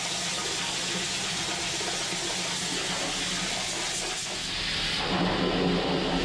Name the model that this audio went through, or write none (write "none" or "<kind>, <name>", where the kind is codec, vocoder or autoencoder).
none